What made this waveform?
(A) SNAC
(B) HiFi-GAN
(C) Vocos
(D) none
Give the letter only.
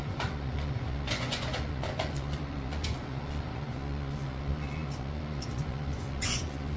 C